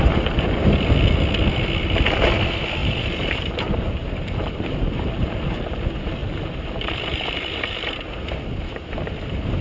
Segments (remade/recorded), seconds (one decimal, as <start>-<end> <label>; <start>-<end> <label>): 0.0-2.8 recorded; 2.8-5.8 remade; 5.8-6.2 recorded; 6.2-8.3 remade; 8.3-9.6 recorded